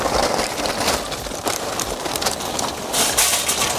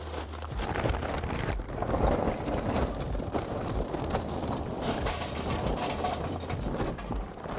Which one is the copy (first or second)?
second